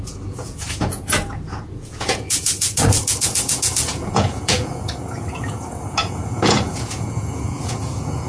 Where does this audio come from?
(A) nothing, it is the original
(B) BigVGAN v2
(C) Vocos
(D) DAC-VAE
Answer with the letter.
C